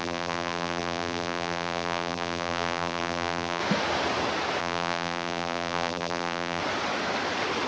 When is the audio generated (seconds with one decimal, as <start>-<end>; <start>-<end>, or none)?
0.0-3.6; 4.6-6.6